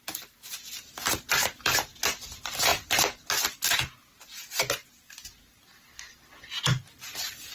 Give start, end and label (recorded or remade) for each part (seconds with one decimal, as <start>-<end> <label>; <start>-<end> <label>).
0.0-2.7 recorded; 2.7-3.4 remade; 3.4-7.5 recorded

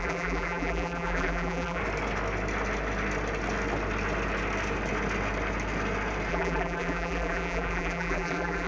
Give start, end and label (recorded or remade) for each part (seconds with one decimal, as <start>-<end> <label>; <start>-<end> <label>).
0.0-1.8 remade; 1.8-6.3 recorded; 6.3-8.7 remade

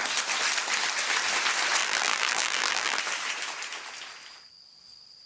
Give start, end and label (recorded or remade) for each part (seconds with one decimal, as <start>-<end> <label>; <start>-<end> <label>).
0.0-1.8 recorded; 1.8-3.0 remade; 3.0-5.3 recorded

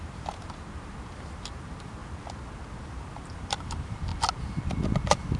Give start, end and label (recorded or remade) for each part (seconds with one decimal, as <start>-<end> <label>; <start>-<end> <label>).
0.0-2.0 remade; 2.0-2.8 recorded; 2.8-4.1 remade; 4.1-5.4 recorded

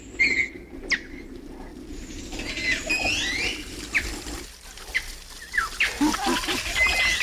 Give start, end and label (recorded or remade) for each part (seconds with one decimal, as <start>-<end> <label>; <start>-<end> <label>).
0.0-7.2 recorded

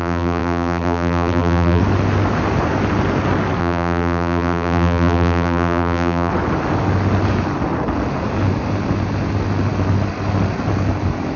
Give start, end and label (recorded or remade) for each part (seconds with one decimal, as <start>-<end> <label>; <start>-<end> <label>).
0.0-1.8 remade; 1.8-3.6 recorded; 3.6-6.3 remade; 6.3-11.4 recorded